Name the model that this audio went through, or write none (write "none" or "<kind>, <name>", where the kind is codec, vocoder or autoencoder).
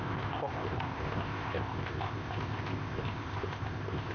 codec, ZipCodec